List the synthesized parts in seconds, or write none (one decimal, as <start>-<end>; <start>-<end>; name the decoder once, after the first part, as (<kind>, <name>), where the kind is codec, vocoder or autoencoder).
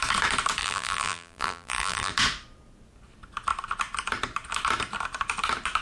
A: 0.6-2.1 (vocoder, BigVGAN v2)